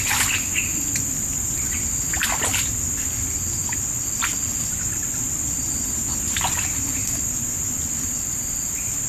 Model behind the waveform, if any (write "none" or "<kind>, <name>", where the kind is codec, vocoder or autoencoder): none